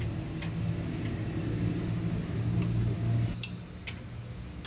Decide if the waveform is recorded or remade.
recorded